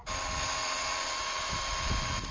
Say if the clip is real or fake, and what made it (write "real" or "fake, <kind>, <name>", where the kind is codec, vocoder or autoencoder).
real